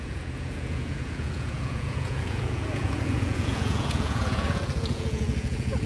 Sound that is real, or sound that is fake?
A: fake